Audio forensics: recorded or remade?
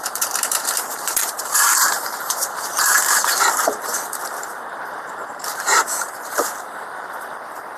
remade